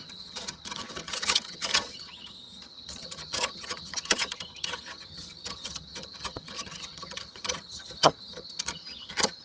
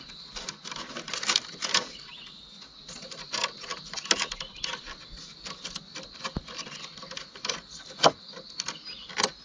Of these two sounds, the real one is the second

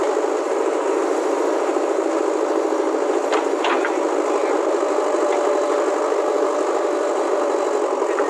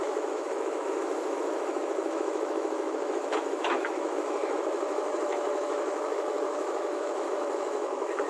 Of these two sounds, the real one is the first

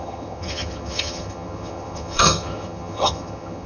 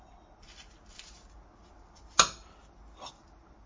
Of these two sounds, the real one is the second